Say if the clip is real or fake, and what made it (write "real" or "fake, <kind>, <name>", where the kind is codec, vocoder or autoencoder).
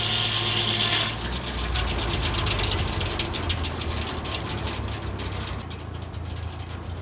real